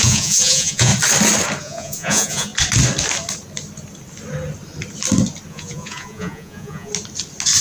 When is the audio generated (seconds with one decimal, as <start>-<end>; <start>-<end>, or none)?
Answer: 0.0-0.9; 1.6-2.5; 5.5-6.9